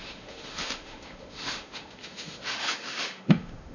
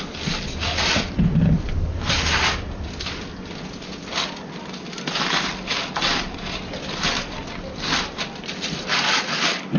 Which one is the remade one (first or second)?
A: first